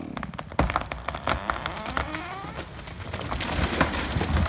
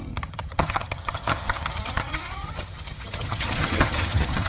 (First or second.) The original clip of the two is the first